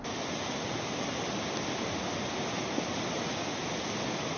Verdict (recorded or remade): recorded